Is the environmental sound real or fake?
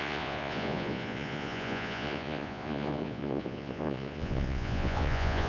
fake